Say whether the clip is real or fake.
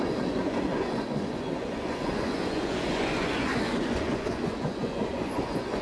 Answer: fake